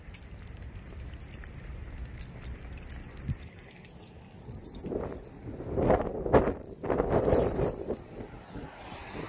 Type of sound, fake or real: real